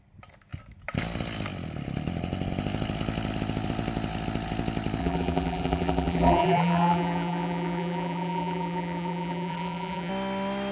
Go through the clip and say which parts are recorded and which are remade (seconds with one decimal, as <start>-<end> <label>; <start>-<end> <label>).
0.0-5.0 recorded; 5.0-10.1 remade; 10.1-10.7 recorded